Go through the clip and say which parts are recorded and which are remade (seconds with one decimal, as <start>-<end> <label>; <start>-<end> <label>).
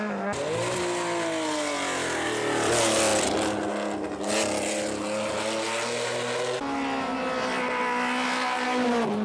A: 0.0-9.2 recorded